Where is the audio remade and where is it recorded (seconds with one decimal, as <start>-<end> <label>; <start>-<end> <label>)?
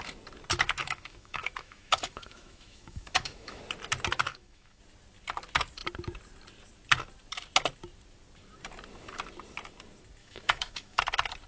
0.0-0.8 recorded; 0.8-3.6 remade; 3.6-4.3 recorded; 4.3-4.8 remade; 4.8-10.2 recorded; 10.2-11.0 remade; 11.0-11.5 recorded